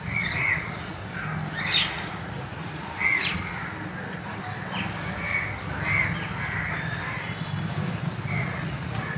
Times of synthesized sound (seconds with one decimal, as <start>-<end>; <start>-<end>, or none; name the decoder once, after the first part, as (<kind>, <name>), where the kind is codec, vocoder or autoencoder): 0.0-1.0 (vocoder, Vocos); 1.9-3.6; 8.4-9.2